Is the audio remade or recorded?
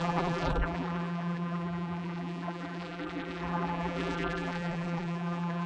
remade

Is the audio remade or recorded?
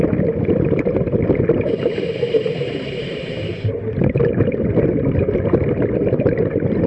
remade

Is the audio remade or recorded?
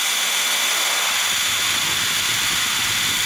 recorded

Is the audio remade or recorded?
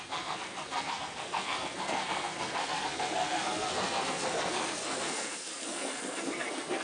remade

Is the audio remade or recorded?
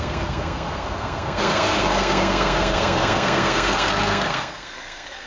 remade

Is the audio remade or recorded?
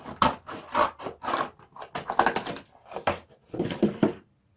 recorded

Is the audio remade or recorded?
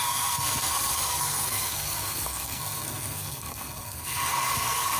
remade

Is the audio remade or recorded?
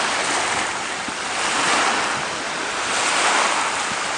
recorded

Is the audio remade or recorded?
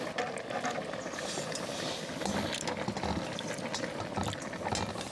recorded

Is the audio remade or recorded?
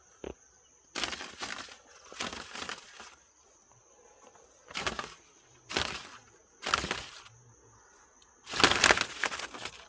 recorded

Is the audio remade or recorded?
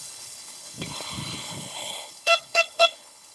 remade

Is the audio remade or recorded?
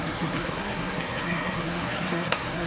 remade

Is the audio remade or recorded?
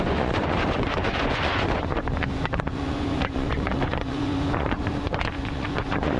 remade